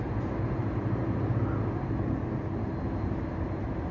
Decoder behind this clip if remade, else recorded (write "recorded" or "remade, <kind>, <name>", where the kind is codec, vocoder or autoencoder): recorded